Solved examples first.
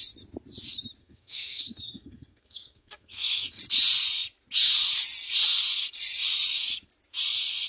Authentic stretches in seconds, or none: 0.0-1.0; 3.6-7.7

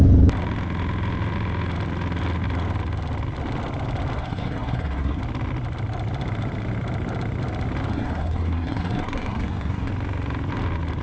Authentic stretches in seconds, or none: 0.0-4.2; 5.2-7.9; 9.9-11.0

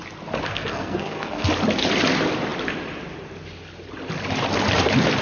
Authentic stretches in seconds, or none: 0.0-0.4; 1.5-5.2

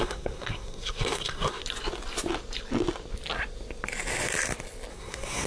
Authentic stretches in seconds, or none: 1.6-4.9

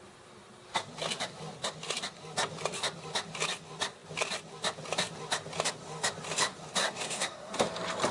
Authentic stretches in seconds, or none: 0.0-6.8; 7.5-8.1

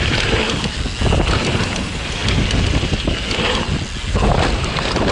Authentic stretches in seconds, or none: 0.0-5.1